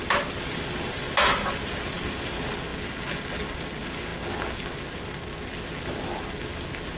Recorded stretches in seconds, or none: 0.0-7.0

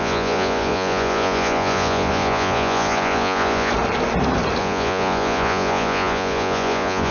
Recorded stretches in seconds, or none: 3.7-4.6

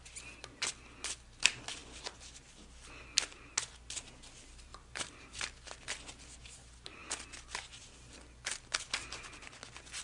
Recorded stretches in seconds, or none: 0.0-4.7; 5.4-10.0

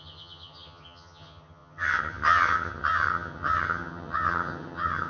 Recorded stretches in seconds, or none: none

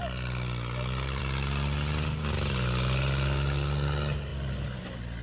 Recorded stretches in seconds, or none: 0.0-5.2

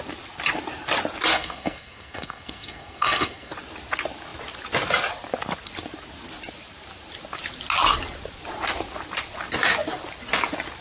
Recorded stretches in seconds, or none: 0.0-1.3; 3.5-10.8

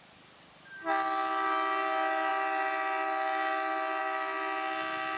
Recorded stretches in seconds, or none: 0.0-5.2

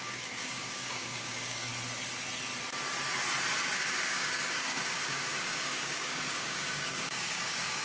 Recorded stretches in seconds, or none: 1.7-3.6